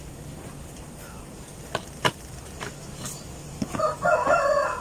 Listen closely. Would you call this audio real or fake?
real